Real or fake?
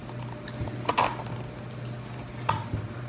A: real